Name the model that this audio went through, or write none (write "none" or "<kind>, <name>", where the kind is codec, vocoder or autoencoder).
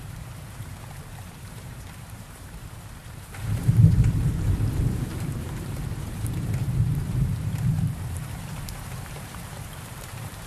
vocoder, BigVGAN v2